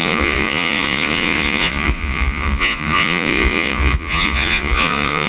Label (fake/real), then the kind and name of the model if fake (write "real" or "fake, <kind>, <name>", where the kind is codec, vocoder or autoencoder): fake, vocoder, Vocos